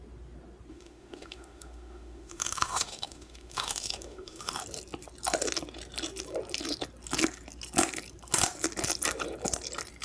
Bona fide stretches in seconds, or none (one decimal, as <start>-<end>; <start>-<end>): 0.0-0.7; 4.5-10.0